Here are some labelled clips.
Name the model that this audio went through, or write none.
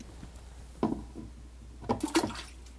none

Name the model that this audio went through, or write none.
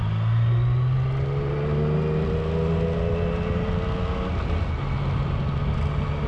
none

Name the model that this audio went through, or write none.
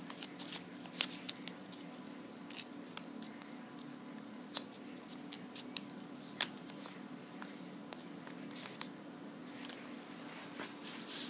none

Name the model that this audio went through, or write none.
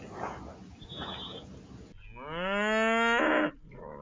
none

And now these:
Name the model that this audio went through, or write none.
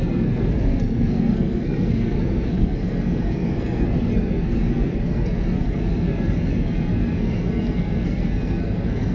codec, SNAC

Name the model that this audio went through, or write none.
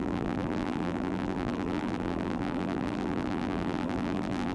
vocoder, BigVGAN v2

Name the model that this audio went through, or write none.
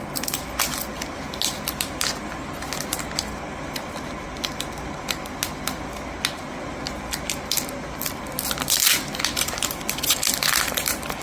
none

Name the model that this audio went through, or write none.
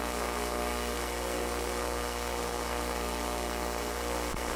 codec, SNAC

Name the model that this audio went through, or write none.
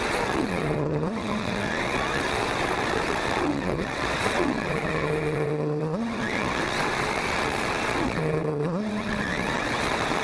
vocoder, WaveNeXt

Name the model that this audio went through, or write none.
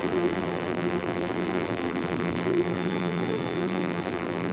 vocoder, BigVGAN v2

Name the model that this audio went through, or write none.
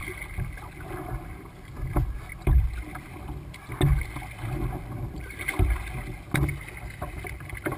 none